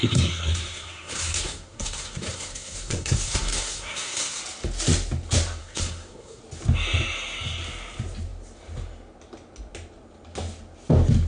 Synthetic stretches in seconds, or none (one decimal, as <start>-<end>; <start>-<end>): 0.0-4.4; 5.6-6.4